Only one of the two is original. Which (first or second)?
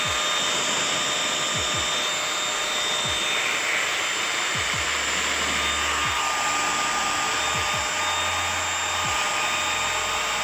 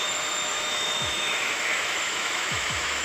first